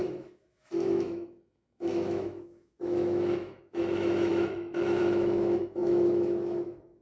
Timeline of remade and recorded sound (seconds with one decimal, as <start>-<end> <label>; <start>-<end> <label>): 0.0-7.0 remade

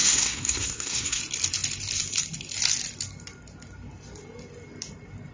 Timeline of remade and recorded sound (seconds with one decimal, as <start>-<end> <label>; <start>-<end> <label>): 0.0-1.2 remade; 1.2-5.3 recorded

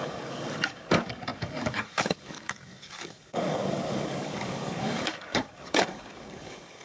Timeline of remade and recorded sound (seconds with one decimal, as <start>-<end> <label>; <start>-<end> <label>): 0.0-6.8 remade

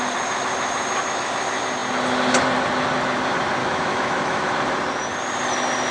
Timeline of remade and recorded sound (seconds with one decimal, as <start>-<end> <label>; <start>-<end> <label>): 0.0-3.6 recorded; 3.6-4.5 remade; 4.5-5.9 recorded

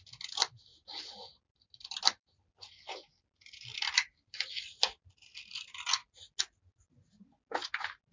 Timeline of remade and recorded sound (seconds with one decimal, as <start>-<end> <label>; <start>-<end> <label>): 0.0-0.7 recorded; 0.7-5.5 remade; 5.5-8.1 recorded

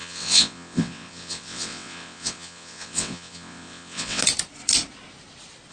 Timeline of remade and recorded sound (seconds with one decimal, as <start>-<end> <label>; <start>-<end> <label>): 0.0-4.2 remade; 4.2-5.7 recorded

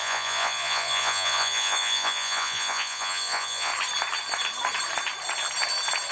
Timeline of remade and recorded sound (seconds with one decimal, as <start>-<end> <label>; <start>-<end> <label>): 0.0-3.7 remade; 3.7-6.1 recorded

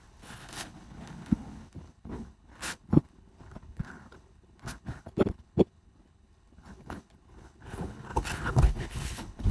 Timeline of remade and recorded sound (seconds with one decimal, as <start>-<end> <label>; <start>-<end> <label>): 0.0-9.5 remade